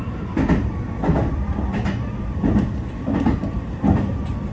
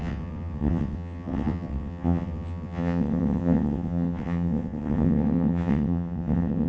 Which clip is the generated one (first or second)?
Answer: second